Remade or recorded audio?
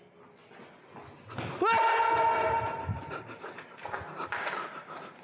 recorded